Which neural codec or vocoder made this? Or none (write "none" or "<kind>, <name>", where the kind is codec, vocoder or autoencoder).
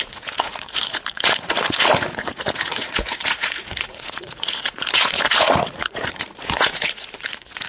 vocoder, Vocos